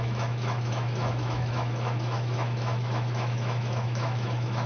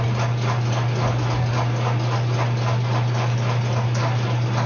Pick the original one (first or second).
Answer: second